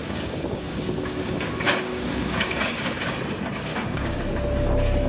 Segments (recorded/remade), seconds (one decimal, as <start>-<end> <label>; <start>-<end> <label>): 0.0-3.1 remade; 3.1-3.7 recorded; 3.7-4.3 remade; 4.3-5.1 recorded